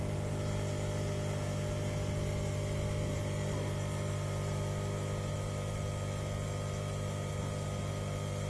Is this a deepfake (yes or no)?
no